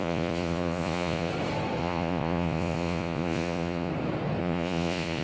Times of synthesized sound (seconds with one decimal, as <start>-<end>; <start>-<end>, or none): 0.0-1.3; 1.8-3.9; 4.4-5.2